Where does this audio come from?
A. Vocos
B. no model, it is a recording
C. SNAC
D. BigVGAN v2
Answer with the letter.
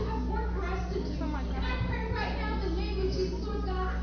B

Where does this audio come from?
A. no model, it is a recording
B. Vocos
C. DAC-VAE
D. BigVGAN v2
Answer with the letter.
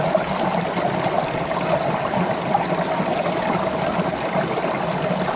A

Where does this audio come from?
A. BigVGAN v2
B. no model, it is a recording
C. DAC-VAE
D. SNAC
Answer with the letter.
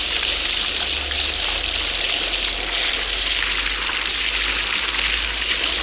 B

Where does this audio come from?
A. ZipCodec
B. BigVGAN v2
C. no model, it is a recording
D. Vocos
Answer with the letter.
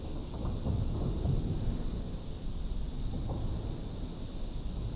C